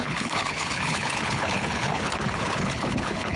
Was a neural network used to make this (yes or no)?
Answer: yes